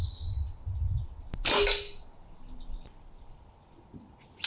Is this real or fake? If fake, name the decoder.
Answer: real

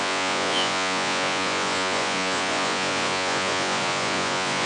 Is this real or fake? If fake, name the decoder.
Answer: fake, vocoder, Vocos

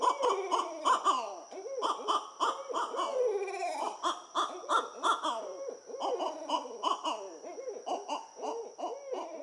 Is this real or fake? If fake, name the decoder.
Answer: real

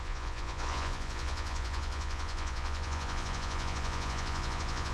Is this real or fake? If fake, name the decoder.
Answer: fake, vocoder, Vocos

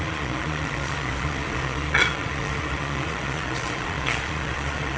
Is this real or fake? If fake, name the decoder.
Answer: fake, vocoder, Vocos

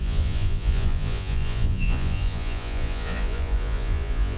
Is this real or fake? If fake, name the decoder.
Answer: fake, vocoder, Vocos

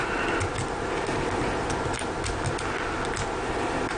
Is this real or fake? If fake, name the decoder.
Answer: real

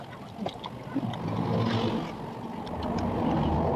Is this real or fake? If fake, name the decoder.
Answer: real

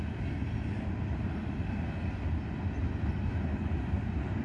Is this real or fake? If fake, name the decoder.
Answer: real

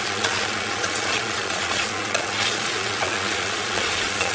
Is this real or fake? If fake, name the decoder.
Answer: fake, vocoder, Vocos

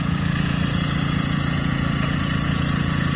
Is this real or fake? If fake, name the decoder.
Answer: fake, vocoder, Vocos